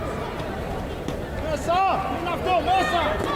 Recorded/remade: recorded